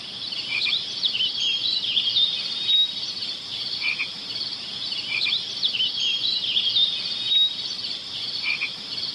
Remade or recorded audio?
remade